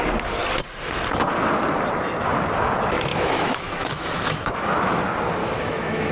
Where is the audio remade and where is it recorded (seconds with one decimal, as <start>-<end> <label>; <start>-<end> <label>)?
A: 0.0-3.1 recorded; 3.1-5.0 remade; 5.0-5.4 recorded; 5.4-6.1 remade